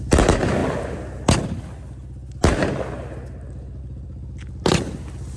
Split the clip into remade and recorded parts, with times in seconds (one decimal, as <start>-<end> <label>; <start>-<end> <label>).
0.0-5.4 recorded